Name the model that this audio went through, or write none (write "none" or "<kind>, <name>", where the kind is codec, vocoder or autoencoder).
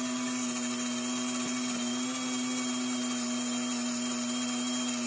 none